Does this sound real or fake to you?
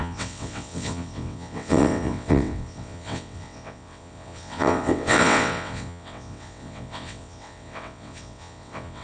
fake